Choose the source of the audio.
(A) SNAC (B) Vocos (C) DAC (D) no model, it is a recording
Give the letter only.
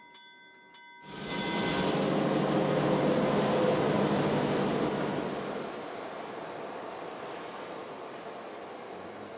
D